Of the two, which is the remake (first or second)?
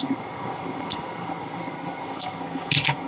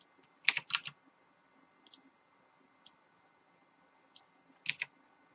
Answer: first